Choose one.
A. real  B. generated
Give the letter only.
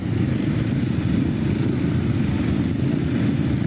A